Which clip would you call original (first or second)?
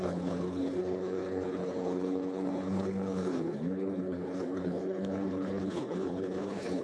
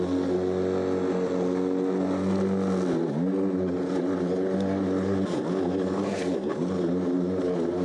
second